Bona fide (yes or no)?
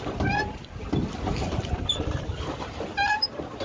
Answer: no